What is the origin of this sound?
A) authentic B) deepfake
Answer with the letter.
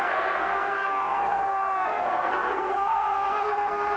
B